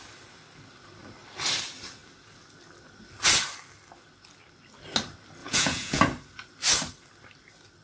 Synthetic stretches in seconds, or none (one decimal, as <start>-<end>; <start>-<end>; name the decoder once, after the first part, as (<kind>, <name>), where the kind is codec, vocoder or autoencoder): 5.4-6.0 (vocoder, Vocos)